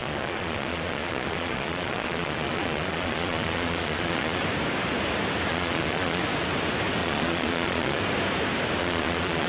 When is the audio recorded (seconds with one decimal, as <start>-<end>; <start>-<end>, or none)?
4.4-5.5; 6.2-7.0; 8.0-8.8

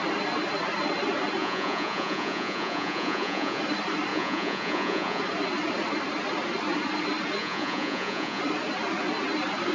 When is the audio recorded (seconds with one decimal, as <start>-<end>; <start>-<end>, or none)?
0.0-1.4; 3.6-4.1; 5.2-7.4; 8.4-9.7

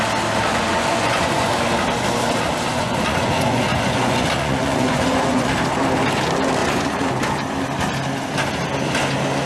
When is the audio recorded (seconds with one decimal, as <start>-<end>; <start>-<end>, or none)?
0.0-0.5; 1.5-2.7; 5.5-6.6; 7.2-9.5

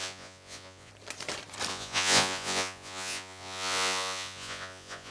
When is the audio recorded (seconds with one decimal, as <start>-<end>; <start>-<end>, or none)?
0.9-1.7

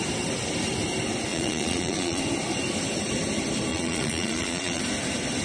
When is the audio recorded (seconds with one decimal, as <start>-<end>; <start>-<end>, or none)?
0.0-1.3; 2.2-3.7; 4.8-5.4

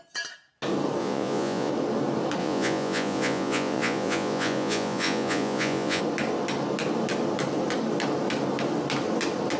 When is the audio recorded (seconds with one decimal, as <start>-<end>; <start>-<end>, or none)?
0.0-1.0; 1.7-2.4; 6.0-9.6